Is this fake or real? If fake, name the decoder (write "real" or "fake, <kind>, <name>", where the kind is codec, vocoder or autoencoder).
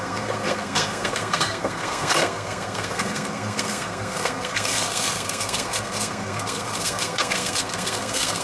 fake, codec, SNAC